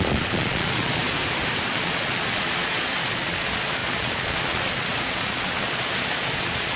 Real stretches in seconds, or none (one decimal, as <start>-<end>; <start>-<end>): 1.0-1.7